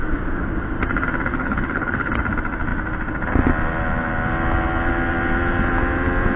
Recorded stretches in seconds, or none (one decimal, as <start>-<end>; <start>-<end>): 0.0-1.3; 2.1-6.4